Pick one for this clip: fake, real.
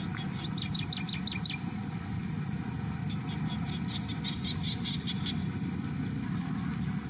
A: real